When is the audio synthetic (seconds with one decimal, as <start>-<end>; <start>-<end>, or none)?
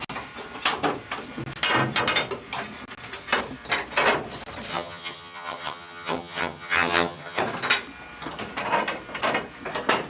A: 4.7-7.4